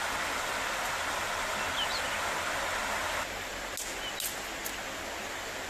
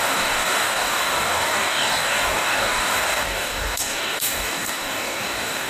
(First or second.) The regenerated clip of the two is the second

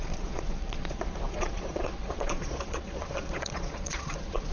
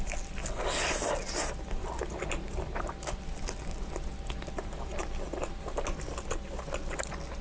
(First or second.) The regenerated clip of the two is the first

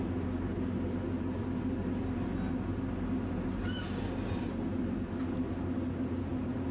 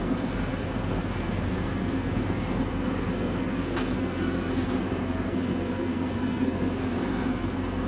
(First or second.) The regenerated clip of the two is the second